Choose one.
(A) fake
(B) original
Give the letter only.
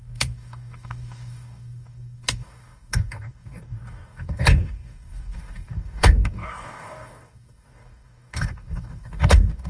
A